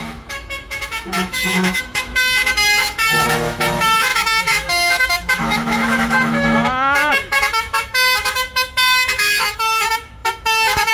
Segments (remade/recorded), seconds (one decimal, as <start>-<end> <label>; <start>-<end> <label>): 0.0-10.9 remade